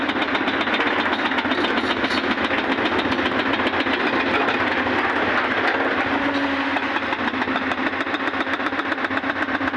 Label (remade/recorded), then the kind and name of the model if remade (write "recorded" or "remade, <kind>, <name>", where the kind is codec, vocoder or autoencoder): recorded